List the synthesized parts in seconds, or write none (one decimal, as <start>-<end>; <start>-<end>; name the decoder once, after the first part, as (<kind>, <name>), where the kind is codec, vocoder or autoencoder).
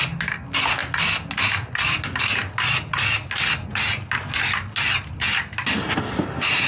none